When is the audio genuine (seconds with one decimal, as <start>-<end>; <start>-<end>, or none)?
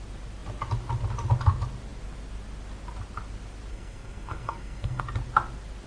0.0-3.7; 5.0-5.9